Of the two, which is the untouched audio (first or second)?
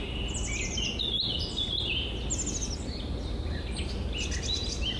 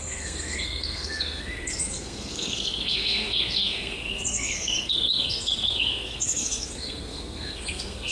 first